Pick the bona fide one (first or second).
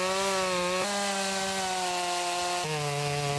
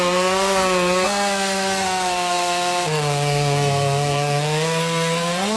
first